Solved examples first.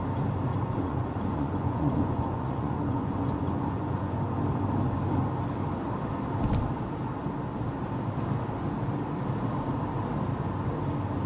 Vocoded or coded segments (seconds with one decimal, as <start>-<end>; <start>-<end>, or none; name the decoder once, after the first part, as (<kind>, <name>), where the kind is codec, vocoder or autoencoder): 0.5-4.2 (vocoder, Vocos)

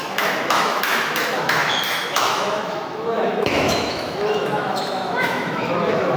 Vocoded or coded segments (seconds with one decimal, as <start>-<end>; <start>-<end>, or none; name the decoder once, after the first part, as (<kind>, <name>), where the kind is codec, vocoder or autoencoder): 0.0-6.2 (autoencoder, DAC-VAE)

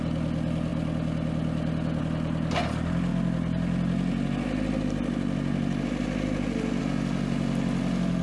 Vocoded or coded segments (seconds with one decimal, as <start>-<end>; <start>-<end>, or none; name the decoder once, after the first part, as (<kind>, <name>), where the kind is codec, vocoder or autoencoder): none

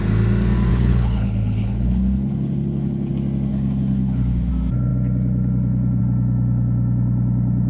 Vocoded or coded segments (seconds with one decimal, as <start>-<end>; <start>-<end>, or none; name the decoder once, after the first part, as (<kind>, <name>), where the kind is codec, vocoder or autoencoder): 0.7-3.1 (codec, HILCodec); 3.5-4.5

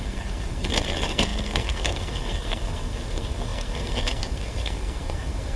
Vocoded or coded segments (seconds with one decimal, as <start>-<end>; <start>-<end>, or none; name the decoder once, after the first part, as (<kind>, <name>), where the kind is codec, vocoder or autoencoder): 0.0-5.6 (codec, SNAC)